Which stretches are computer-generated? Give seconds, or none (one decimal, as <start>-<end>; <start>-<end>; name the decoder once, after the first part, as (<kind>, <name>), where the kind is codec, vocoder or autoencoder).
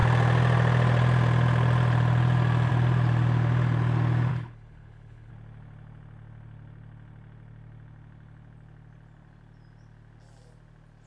4.3-5.3 (codec, HILCodec)